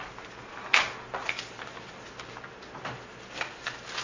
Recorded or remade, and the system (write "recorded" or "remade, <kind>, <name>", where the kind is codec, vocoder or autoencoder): recorded